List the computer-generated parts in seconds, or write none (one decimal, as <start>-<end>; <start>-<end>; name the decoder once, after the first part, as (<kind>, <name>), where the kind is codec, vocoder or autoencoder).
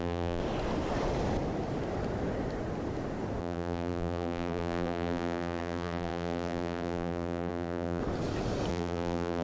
0.0-0.4 (vocoder, BigVGAN v2); 3.4-8.0; 8.7-9.4